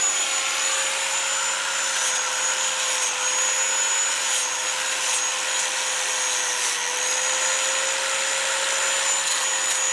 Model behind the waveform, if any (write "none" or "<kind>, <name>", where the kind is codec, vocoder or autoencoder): none